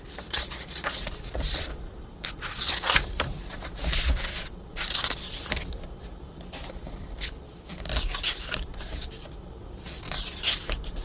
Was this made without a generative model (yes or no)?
no